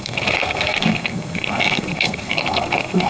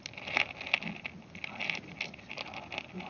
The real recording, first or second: second